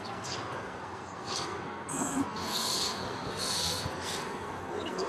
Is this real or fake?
fake